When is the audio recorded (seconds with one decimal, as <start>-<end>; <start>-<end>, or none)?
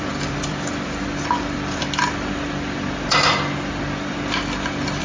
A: 1.8-5.0